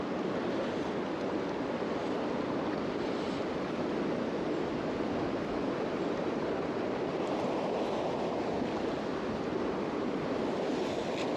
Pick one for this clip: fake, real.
real